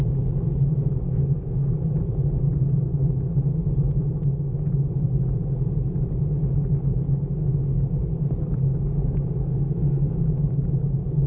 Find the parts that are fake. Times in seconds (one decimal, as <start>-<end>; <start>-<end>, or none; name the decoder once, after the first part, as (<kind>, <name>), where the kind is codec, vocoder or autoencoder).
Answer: 1.1-1.7 (codec, SNAC); 9.4-10.1